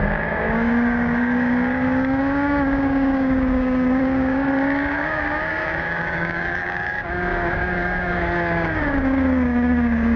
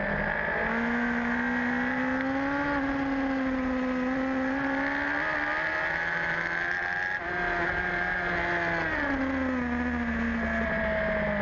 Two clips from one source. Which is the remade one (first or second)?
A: first